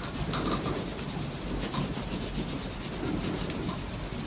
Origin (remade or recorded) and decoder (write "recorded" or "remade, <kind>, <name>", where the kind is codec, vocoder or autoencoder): recorded